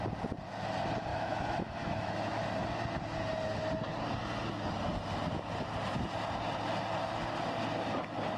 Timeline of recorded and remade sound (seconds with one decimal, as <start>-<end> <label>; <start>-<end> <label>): 0.0-1.1 recorded; 1.1-2.4 remade; 2.4-8.4 recorded